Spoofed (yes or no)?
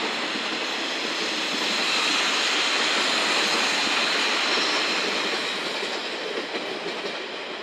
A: no